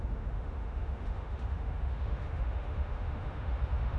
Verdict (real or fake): fake